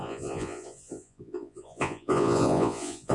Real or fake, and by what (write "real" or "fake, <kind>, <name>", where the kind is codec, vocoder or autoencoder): fake, vocoder, Vocos